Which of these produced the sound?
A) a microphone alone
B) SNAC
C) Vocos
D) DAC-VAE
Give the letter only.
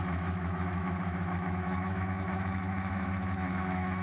D